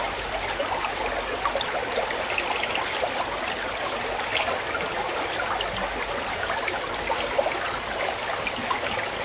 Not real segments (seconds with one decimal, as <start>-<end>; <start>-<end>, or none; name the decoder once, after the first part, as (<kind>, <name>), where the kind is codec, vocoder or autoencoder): none